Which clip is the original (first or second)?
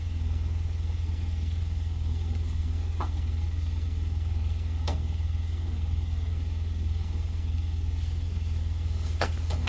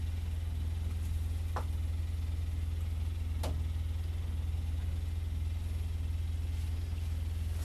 second